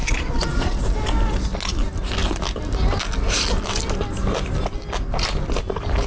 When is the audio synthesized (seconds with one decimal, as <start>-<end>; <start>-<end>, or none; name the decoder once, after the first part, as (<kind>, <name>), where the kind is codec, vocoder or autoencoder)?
0.0-0.8 (vocoder, Vocos)